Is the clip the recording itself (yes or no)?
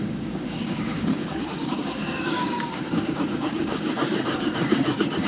no